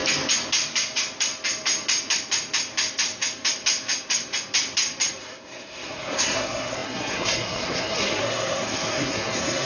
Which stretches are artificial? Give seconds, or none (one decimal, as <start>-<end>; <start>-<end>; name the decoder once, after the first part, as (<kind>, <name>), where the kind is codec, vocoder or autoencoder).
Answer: 5.2-9.7 (codec, SNAC)